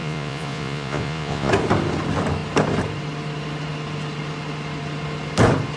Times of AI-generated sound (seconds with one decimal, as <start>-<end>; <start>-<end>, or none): 0.0-1.5